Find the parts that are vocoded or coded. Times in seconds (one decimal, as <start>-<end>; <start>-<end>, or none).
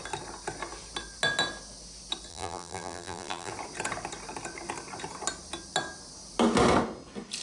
2.3-3.5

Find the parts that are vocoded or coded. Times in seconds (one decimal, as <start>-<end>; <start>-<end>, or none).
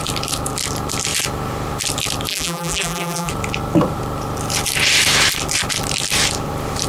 2.3-3.3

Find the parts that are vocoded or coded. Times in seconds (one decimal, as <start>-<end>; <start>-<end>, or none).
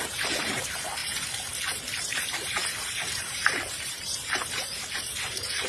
0.0-1.0; 2.0-5.7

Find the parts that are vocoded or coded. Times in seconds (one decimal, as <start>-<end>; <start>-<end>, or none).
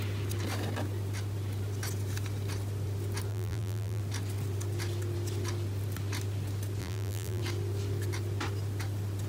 3.3-4.0; 6.8-7.4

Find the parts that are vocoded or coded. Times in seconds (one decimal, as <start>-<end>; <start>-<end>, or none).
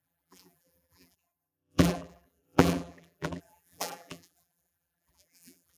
0.0-5.8